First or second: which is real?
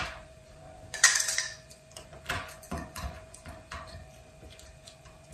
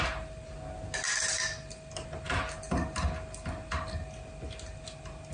second